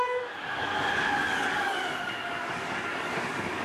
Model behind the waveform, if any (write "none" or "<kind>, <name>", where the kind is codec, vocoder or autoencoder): codec, DAC